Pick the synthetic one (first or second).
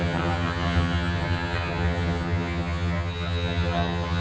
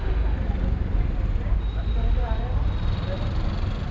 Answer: first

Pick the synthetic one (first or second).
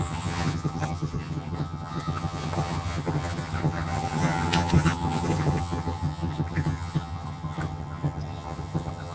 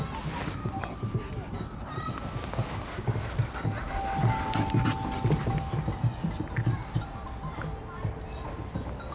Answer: first